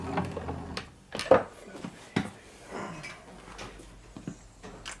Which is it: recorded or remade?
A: recorded